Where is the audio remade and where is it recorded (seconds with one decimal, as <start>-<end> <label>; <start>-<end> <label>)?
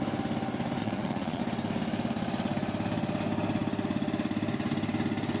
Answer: 0.0-0.8 recorded; 0.8-1.4 remade; 1.4-5.4 recorded